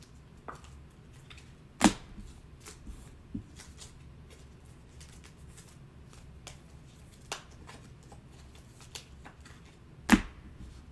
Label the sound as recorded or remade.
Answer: recorded